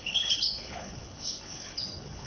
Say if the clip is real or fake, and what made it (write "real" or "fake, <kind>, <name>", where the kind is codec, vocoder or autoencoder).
fake, codec, HILCodec